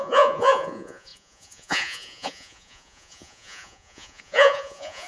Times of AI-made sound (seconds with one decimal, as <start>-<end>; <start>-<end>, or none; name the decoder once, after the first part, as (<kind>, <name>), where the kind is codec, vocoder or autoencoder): 0.0-5.1 (vocoder, Vocos)